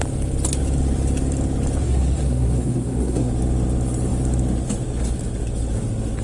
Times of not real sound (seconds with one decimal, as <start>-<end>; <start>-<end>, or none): 1.8-3.3